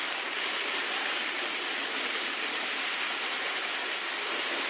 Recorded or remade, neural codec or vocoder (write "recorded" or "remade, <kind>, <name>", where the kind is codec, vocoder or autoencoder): remade, vocoder, BigVGAN v2